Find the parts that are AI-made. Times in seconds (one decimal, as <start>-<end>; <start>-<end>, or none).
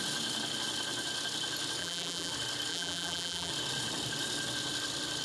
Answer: 1.8-2.3; 2.7-3.5